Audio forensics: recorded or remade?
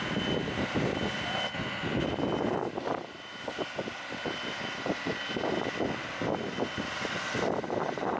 recorded